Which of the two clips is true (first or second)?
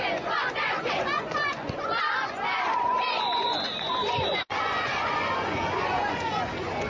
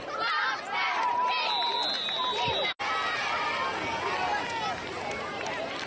second